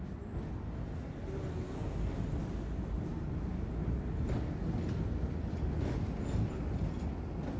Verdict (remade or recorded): recorded